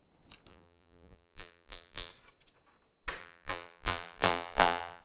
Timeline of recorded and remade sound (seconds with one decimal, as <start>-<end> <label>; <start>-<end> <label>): 0.0-0.5 recorded; 0.5-2.1 remade; 2.1-3.2 recorded; 3.2-5.0 remade